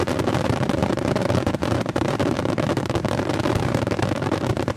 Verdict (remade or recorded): remade